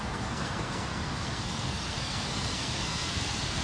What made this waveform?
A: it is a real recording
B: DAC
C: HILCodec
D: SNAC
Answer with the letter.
D